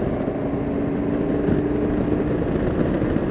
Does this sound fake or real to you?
real